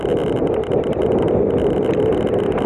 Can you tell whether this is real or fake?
real